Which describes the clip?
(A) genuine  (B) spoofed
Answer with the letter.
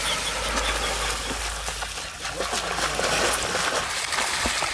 A